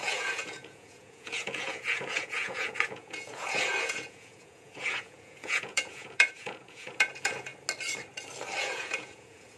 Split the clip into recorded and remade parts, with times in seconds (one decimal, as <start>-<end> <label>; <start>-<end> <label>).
0.0-7.5 remade; 7.5-8.6 recorded; 8.6-9.6 remade